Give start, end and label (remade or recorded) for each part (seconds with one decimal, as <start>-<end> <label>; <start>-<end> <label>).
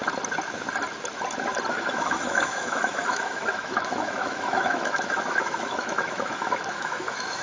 0.0-1.7 recorded; 1.7-7.4 remade